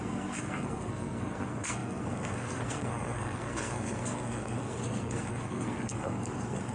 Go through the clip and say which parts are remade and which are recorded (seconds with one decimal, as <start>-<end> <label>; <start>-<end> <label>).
0.0-6.7 remade